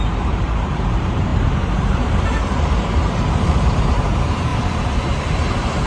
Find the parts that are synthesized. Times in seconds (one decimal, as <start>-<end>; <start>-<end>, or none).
0.0-4.5